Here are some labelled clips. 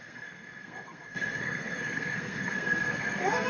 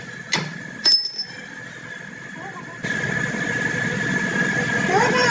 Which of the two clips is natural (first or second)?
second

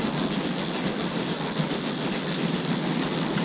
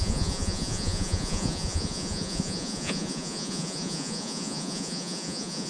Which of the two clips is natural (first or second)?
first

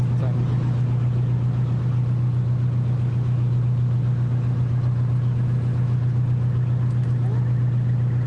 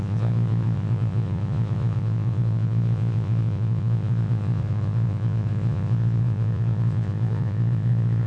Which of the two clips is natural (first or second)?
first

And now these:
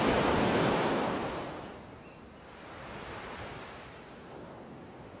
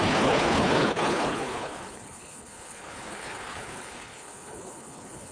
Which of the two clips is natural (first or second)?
first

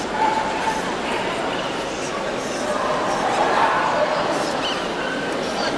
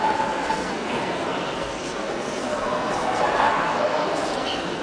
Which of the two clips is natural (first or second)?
first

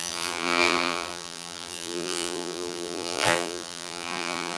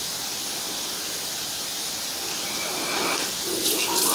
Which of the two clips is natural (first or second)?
second